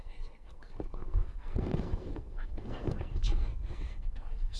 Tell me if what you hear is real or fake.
fake